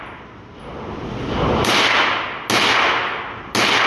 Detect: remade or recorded recorded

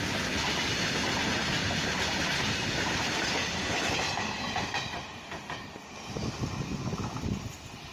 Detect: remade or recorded recorded